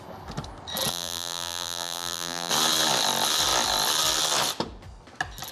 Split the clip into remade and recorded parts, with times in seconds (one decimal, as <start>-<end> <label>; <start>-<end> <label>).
0.0-0.9 recorded; 0.9-2.5 remade; 2.5-5.5 recorded